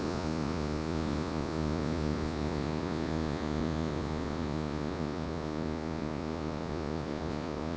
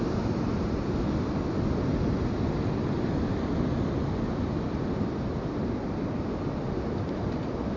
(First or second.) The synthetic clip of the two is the first